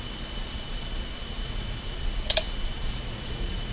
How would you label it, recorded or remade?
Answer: remade